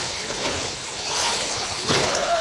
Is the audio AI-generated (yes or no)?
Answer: yes